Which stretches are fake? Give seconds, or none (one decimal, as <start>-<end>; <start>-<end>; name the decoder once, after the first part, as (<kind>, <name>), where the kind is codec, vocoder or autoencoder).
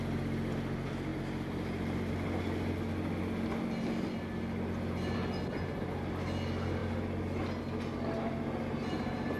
none